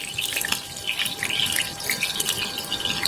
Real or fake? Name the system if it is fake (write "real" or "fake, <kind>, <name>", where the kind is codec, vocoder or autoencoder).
real